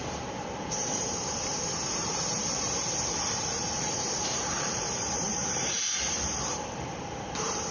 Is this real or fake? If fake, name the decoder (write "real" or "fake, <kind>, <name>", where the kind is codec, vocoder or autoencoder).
fake, vocoder, BigVGAN v2